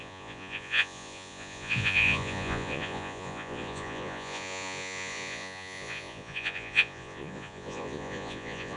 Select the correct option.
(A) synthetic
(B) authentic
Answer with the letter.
A